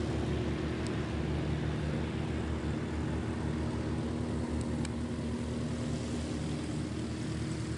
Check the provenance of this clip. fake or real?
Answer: real